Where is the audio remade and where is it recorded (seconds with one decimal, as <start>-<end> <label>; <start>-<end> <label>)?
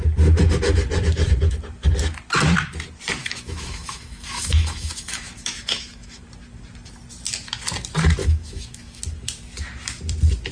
0.0-3.2 recorded; 3.2-6.2 remade; 6.2-8.2 recorded; 8.2-9.0 remade; 9.0-10.5 recorded